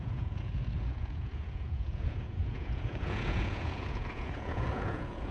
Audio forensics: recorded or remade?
remade